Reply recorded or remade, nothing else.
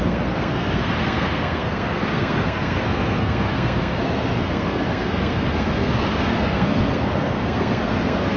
remade